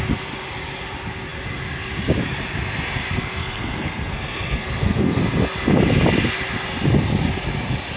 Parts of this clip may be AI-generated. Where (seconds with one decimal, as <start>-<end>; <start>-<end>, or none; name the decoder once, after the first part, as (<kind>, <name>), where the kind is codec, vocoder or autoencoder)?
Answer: 3.4-5.2 (codec, SNAC)